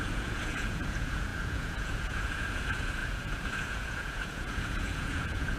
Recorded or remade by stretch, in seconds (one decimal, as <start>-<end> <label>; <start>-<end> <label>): 0.0-5.6 remade